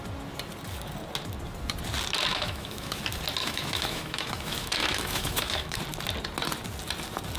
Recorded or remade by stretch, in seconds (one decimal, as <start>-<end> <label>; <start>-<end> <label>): 0.0-2.3 recorded; 2.3-3.0 remade; 3.0-3.4 recorded; 3.4-5.8 remade; 5.8-7.4 recorded